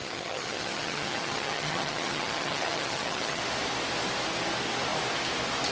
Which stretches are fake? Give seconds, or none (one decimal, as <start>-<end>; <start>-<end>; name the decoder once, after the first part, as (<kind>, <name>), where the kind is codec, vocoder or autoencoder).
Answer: 0.0-3.4 (vocoder, HiFi-GAN)